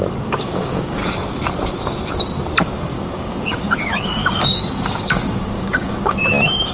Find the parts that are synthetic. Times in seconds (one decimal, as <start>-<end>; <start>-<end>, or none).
0.0-1.0; 2.6-6.7